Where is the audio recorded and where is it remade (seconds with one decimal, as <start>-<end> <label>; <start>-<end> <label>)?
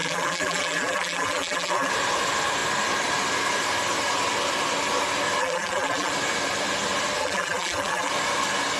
0.0-1.9 remade; 1.9-5.4 recorded; 5.4-6.1 remade; 6.1-7.2 recorded; 7.2-8.1 remade; 8.1-8.8 recorded